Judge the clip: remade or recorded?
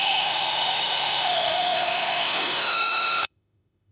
remade